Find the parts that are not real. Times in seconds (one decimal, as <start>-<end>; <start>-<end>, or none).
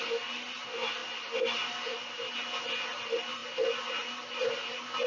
1.0-2.3